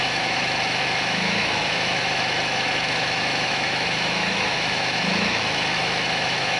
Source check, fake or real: fake